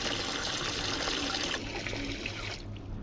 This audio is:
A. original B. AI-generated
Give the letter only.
A